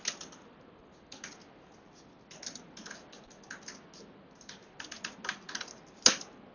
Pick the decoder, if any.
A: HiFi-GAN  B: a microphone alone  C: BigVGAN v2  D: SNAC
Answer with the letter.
B